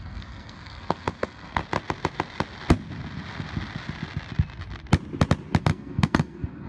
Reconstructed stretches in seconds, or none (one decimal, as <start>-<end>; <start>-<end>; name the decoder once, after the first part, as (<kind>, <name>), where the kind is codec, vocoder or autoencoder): 0.0-1.6 (codec, SNAC); 5.6-6.7